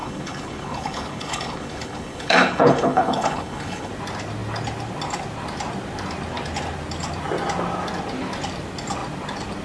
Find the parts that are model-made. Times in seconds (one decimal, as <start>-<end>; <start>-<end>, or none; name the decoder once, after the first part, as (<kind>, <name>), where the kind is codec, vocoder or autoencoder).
0.0-3.9 (codec, HILCodec)